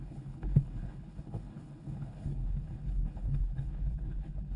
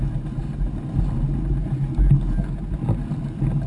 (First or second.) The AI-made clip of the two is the first